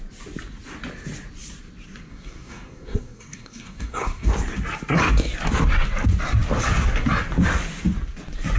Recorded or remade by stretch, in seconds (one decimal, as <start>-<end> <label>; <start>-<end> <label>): 0.0-2.1 recorded; 2.1-4.3 remade; 4.3-8.6 recorded